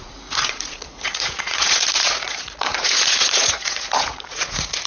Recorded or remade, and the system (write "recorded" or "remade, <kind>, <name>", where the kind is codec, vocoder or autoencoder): remade, vocoder, Vocos